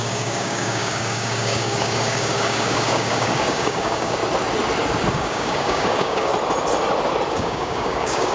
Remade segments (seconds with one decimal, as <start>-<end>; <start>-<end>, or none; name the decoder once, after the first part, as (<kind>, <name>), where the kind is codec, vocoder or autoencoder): 0.0-4.2 (codec, DAC); 5.1-6.3; 7.3-8.3